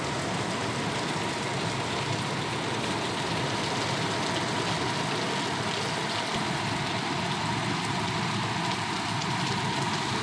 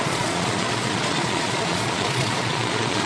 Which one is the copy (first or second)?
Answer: second